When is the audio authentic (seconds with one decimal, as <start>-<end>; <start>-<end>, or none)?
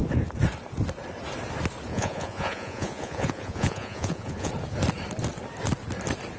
0.0-1.9; 4.5-6.4